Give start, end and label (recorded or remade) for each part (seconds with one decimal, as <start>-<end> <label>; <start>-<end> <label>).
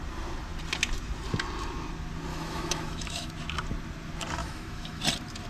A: 0.0-2.3 recorded; 2.3-3.3 remade; 3.3-4.4 recorded; 4.4-5.0 remade; 5.0-5.5 recorded